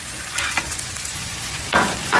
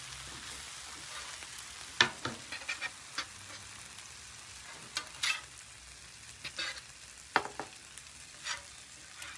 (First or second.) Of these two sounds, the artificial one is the first